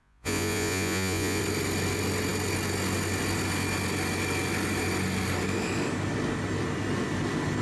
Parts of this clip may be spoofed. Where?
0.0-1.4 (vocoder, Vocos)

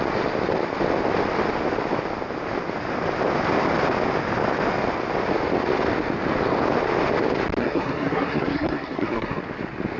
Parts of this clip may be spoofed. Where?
7.6-9.4 (codec, SNAC)

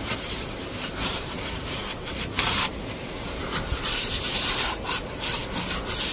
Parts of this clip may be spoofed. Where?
0.0-5.4 (vocoder, BigVGAN v2)

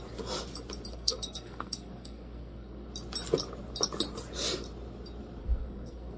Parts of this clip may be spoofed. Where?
0.9-2.9 (codec, SNAC); 5.4-6.2